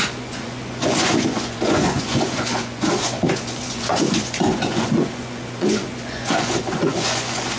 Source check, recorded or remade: remade